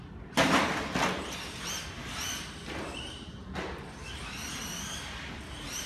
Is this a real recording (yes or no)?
yes